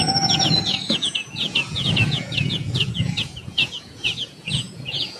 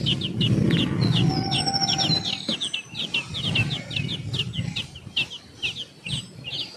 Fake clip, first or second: first